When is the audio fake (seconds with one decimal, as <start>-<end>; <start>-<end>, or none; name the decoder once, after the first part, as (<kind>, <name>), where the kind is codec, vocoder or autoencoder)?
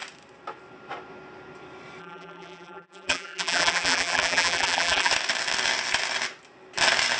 2.0-5.1 (vocoder, BigVGAN v2)